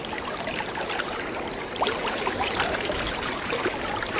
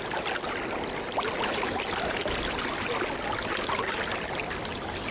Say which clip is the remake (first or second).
first